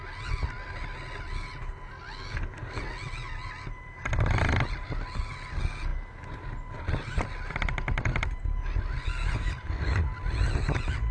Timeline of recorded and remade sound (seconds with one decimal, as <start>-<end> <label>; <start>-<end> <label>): 0.0-11.1 recorded